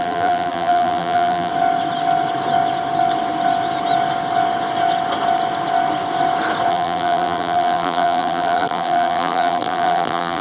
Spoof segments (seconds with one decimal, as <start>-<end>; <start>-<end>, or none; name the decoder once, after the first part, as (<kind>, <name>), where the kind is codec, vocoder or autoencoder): 0.0-1.5 (vocoder, BigVGAN v2); 6.7-10.4

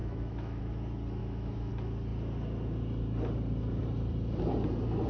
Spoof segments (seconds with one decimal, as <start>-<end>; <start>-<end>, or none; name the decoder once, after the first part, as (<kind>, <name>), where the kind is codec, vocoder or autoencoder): 0.0-0.6 (autoencoder, DAC-VAE); 1.2-1.7

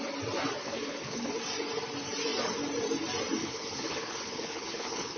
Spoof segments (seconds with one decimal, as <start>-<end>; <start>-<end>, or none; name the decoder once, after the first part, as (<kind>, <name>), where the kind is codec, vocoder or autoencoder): 0.6-1.3 (codec, HILCodec); 3.4-5.2

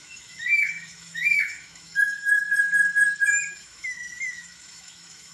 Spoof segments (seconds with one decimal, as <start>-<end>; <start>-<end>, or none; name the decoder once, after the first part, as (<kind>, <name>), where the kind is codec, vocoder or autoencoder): 0.0-2.5 (autoencoder, DAC-VAE); 3.5-5.3

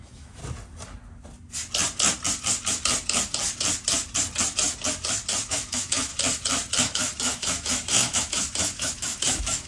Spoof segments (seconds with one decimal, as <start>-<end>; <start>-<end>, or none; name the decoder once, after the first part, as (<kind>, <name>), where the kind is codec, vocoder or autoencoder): 0.0-0.4 (autoencoder, DAC-VAE); 5.5-6.1; 6.8-9.7

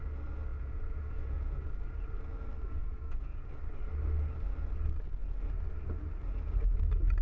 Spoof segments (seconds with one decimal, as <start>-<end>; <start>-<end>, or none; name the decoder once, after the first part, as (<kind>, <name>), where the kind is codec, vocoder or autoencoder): 0.5-1.7 (vocoder, Vocos); 2.8-3.5

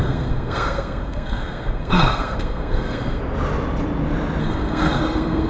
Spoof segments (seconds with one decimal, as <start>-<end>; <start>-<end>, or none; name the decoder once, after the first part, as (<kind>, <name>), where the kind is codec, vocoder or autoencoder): 0.0-3.2 (codec, SNAC); 4.4-5.5